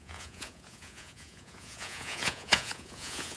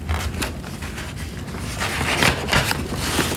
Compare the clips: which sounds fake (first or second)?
first